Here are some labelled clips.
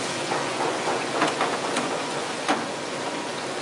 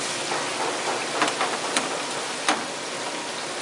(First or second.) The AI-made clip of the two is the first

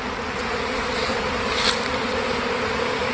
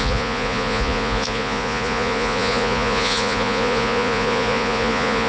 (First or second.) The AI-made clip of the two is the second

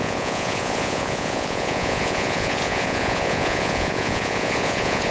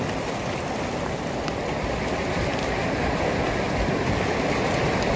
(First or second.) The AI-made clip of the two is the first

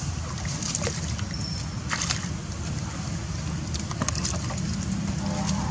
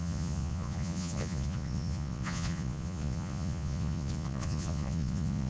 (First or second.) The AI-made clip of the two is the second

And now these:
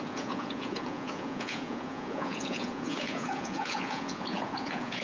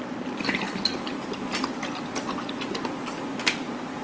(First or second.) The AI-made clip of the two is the first